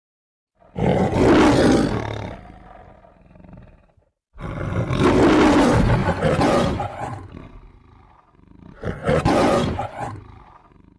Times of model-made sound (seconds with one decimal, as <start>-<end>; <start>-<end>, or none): 6.0-7.3; 9.0-10.1